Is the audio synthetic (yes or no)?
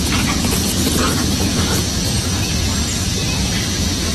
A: yes